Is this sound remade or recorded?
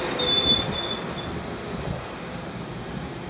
recorded